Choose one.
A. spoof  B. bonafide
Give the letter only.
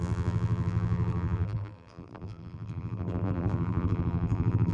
A